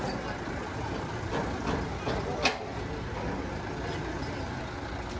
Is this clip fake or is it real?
real